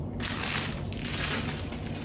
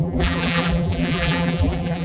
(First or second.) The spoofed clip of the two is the second